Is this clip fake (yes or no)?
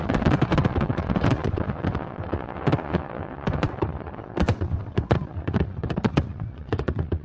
yes